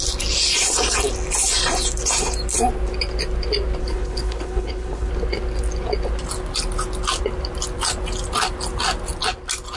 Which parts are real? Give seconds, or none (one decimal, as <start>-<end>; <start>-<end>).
0.0-3.8; 5.1-9.8